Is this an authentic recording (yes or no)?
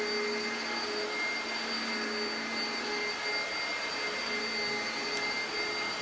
yes